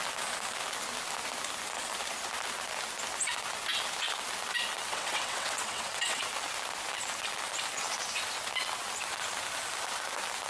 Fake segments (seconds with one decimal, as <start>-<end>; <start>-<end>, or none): 4.9-6.2